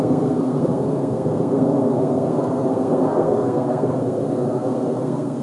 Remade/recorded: remade